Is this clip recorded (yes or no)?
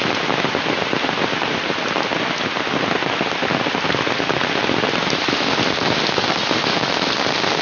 yes